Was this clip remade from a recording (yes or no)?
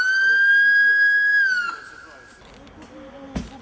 no